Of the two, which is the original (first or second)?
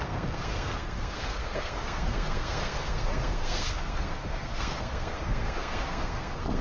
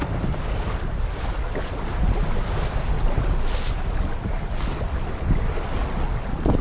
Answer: second